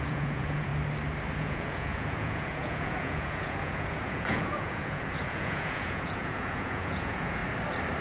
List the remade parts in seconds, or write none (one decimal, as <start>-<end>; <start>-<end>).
0.0-0.7; 1.4-7.4